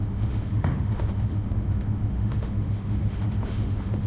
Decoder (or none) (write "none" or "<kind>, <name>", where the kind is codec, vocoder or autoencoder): autoencoder, DAC-VAE